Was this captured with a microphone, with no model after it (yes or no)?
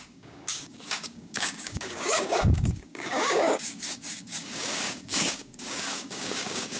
no